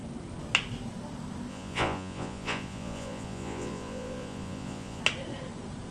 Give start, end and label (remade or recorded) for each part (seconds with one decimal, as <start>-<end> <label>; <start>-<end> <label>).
0.0-1.5 recorded; 1.5-5.0 remade; 5.0-5.9 recorded